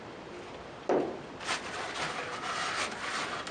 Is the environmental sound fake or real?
real